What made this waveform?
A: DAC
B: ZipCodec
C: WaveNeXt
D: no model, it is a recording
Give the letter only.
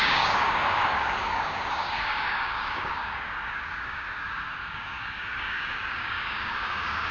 A